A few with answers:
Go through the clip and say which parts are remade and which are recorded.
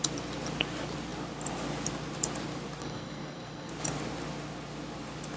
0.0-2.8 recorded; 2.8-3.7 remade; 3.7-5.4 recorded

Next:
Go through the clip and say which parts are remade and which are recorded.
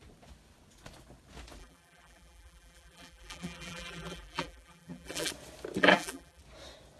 0.0-1.6 recorded; 1.6-5.3 remade; 5.3-5.8 recorded; 5.8-6.4 remade; 6.4-7.0 recorded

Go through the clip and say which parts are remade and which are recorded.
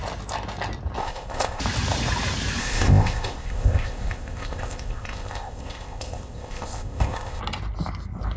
0.0-1.0 recorded; 1.0-1.6 remade; 1.6-2.6 recorded; 2.6-7.4 remade; 7.4-8.4 recorded